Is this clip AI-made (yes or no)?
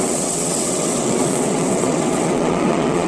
yes